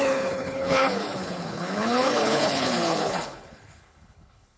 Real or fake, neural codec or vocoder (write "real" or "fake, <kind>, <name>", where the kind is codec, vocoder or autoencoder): fake, codec, HILCodec